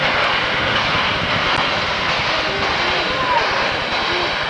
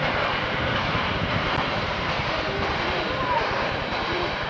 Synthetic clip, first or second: second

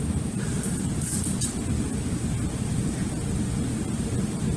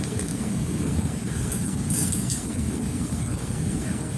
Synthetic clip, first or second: second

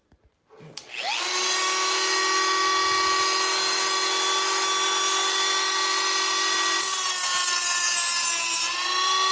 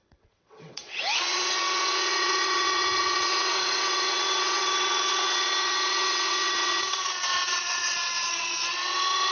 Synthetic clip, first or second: second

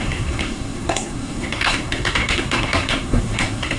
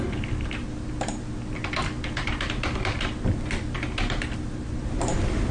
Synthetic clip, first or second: first